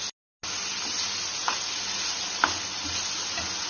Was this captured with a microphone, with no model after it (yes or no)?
yes